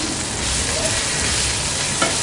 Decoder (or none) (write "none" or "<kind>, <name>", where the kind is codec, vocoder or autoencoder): none